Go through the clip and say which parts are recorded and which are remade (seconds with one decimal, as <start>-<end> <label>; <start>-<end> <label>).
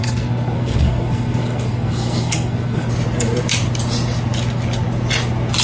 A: 0.0-2.9 remade; 2.9-5.6 recorded